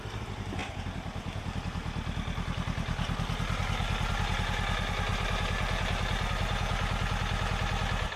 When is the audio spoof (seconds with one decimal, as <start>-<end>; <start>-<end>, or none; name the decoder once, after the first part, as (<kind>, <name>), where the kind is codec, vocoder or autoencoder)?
none